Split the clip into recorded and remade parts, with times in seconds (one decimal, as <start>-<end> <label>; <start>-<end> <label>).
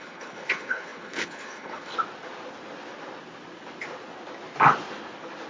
0.0-1.9 remade; 1.9-5.5 recorded